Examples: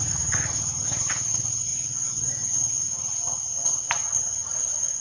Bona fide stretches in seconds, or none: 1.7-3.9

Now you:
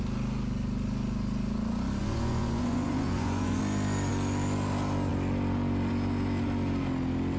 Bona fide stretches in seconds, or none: 0.0-2.0; 3.6-7.4